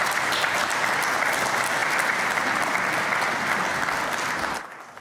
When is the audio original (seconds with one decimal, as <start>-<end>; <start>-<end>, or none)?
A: 0.0-5.0